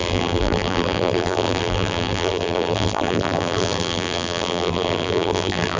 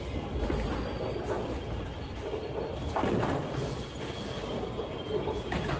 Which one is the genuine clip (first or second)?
second